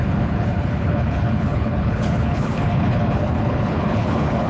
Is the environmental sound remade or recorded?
remade